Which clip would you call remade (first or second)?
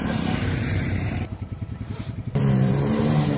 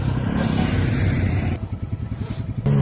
first